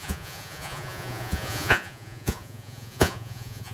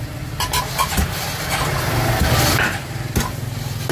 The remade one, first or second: first